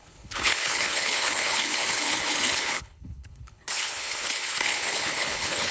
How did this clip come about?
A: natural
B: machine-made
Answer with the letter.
B